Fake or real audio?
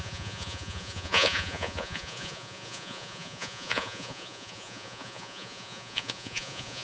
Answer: fake